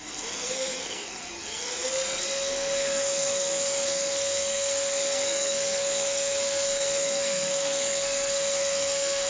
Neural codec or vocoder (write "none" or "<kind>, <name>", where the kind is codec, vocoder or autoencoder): codec, SNAC